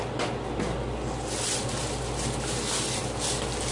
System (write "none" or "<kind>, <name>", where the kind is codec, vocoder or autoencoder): none